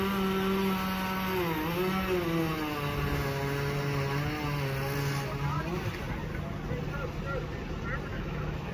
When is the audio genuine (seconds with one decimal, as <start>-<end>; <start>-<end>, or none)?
0.0-8.1